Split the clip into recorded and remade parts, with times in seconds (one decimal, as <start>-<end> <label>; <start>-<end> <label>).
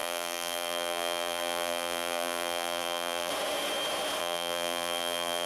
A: 0.0-3.3 remade; 3.3-4.2 recorded; 4.2-5.5 remade